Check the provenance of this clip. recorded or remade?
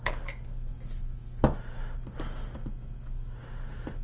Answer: recorded